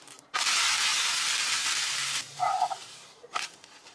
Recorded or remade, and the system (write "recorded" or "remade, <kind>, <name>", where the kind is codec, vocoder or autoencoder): recorded